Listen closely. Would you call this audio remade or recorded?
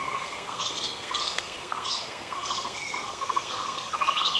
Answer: remade